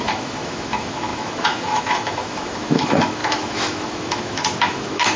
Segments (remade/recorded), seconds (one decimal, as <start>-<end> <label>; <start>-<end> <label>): 0.0-5.2 remade